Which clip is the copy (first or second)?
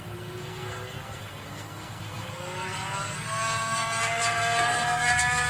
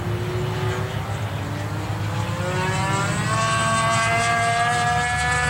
first